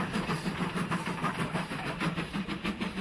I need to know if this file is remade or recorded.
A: remade